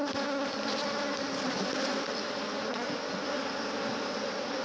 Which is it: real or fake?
real